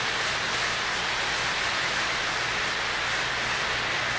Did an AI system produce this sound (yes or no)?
no